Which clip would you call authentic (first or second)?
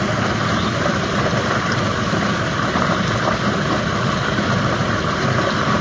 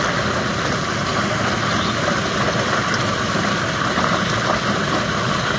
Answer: second